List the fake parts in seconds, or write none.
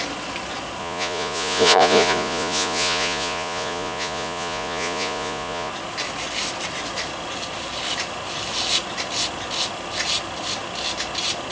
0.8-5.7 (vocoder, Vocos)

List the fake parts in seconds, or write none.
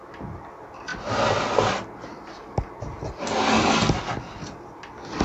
none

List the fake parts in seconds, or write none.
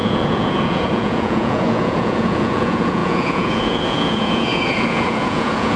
0.0-5.8 (vocoder, Vocos)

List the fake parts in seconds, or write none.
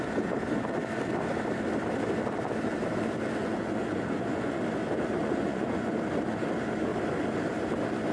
3.4-4.6 (vocoder, Vocos); 5.2-5.9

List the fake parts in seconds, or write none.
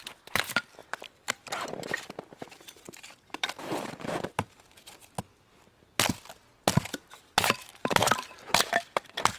0.8-5.2 (vocoder, BigVGAN v2); 7.8-9.4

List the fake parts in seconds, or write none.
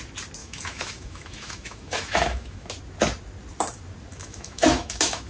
0.4-2.7 (autoencoder, DAC-VAE); 4.1-5.3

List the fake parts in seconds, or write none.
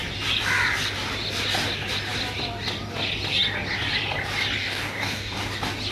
4.6-5.5 (codec, DAC)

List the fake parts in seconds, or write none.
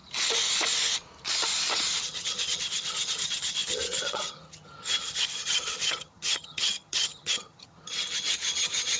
2.0-9.0 (vocoder, HiFi-GAN)